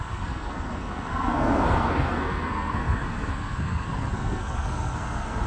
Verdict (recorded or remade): remade